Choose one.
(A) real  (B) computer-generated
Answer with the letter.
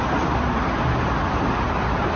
A